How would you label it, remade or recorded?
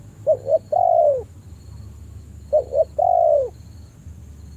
remade